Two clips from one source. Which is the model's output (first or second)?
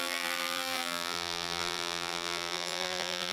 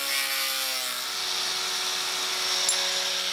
first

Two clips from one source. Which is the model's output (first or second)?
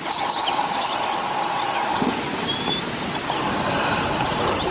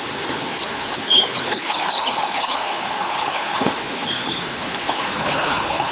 second